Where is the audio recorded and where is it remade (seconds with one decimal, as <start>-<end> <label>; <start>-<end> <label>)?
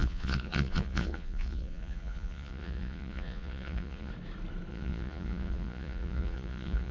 0.0-4.1 remade; 4.1-4.7 recorded; 4.7-6.9 remade